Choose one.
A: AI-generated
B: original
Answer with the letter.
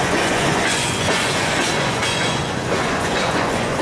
A